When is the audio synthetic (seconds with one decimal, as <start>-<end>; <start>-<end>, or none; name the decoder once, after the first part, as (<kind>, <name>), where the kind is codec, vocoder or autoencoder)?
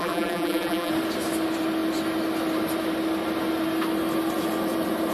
0.0-0.9 (vocoder, BigVGAN v2)